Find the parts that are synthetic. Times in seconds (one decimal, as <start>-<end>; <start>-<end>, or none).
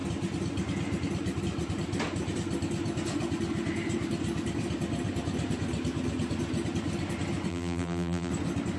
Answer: 7.5-8.3